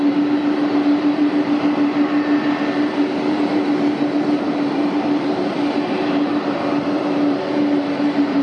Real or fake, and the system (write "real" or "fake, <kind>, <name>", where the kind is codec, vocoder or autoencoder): fake, vocoder, BigVGAN v2